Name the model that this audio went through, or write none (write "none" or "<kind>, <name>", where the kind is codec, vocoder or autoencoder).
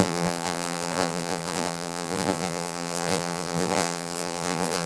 vocoder, BigVGAN v2